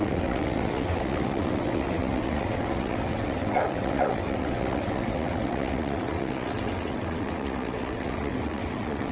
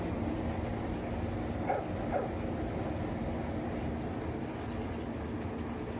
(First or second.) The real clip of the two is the second